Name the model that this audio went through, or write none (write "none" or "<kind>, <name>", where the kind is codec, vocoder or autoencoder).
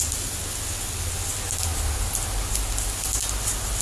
none